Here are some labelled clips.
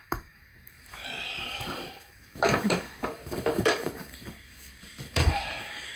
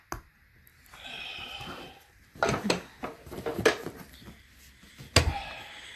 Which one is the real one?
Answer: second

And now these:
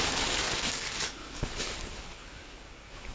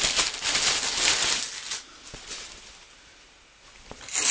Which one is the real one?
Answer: second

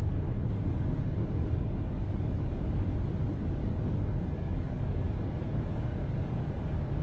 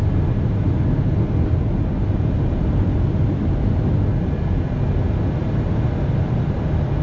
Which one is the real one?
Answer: second